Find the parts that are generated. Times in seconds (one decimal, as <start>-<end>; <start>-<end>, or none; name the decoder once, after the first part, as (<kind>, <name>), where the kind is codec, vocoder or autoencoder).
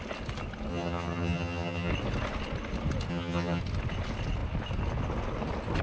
0.7-1.9 (vocoder, HiFi-GAN); 3.1-3.6